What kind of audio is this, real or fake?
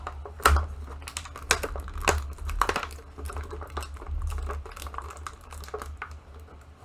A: real